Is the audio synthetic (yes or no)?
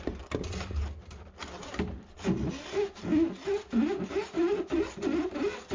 no